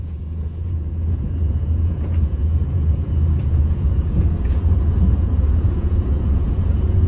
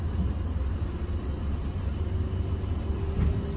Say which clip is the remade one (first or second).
first